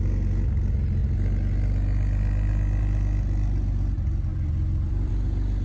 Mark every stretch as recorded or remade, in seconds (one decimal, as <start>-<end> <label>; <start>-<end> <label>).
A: 0.0-4.3 recorded; 4.3-5.1 remade; 5.1-5.6 recorded